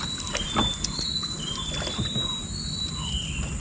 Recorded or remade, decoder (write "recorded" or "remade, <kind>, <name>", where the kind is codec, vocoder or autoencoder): recorded